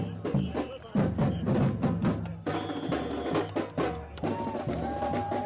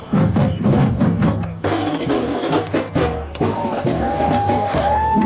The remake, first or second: second